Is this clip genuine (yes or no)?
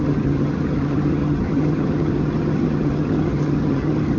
no